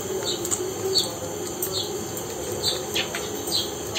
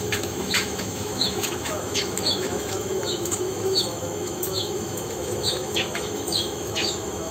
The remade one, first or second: second